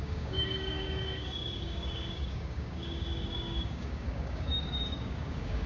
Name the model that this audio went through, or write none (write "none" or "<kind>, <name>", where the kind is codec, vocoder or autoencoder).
codec, DAC